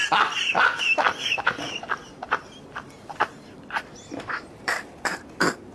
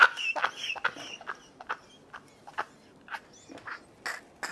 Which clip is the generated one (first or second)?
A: first